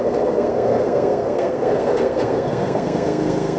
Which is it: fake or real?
fake